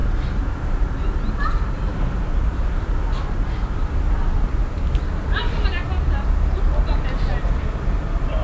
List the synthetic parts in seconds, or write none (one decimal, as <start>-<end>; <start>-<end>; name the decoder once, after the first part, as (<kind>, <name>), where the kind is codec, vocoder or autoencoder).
none

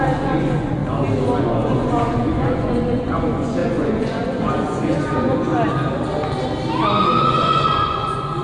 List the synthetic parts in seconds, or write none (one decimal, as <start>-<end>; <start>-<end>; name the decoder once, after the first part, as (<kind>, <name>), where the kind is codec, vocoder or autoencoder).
0.0-0.8 (vocoder, Vocos); 1.4-5.5; 7.0-8.4